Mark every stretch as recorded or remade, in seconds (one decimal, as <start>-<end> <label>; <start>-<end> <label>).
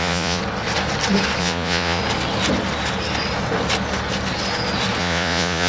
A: 0.0-0.4 remade; 0.4-1.4 recorded; 1.4-2.0 remade; 2.0-5.0 recorded; 5.0-5.7 remade